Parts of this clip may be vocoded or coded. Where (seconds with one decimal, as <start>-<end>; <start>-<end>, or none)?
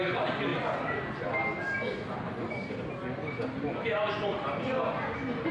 none